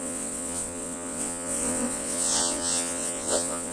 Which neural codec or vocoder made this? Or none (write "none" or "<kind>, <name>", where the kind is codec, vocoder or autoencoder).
vocoder, WaveNeXt